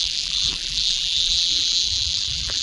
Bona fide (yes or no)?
no